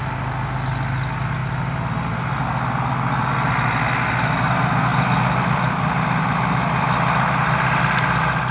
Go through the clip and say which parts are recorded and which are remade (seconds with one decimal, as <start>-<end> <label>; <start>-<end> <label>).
0.0-8.5 recorded